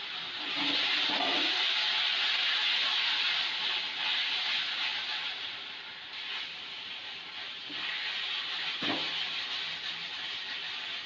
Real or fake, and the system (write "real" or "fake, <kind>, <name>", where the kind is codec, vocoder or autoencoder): real